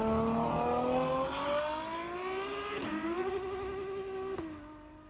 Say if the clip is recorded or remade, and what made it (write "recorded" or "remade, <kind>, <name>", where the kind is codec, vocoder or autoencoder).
recorded